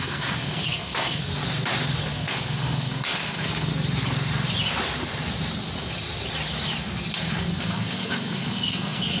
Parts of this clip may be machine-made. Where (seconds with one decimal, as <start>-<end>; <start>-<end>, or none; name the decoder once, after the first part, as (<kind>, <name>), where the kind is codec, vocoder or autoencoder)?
0.0-1.3 (codec, SNAC); 2.0-3.7; 7.2-9.2

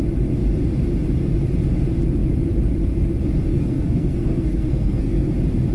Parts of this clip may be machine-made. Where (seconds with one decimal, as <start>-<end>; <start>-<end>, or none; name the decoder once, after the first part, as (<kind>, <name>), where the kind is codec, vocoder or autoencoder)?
3.5-5.3 (codec, SNAC)

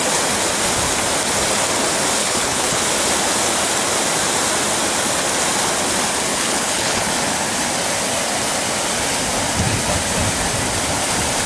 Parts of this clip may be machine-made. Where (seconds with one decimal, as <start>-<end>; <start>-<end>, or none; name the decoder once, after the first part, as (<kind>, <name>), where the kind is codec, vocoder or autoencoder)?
2.2-2.8 (codec, HILCodec); 6.3-7.1